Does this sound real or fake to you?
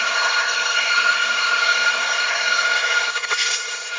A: fake